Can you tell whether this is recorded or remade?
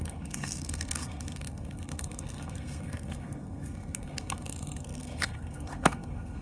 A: remade